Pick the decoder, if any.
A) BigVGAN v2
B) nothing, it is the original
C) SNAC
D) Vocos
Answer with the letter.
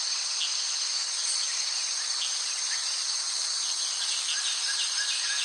B